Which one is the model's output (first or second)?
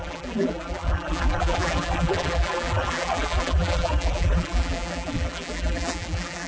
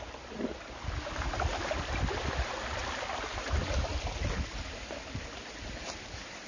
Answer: first